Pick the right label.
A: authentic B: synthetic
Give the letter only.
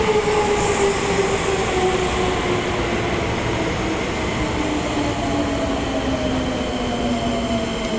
A